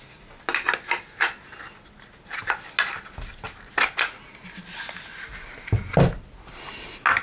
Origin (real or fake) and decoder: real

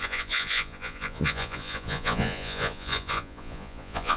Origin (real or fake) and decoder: fake, vocoder, Vocos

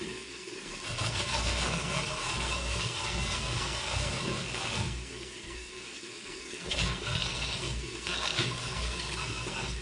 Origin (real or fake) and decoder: fake, codec, SNAC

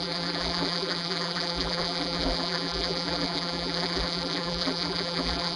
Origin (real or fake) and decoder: fake, vocoder, BigVGAN v2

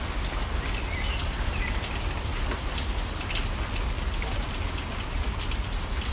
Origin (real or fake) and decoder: real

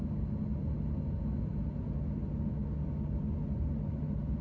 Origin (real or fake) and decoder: real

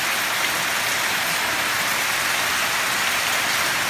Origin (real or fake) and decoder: real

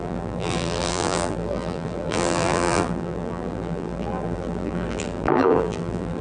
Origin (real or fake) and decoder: fake, vocoder, BigVGAN v2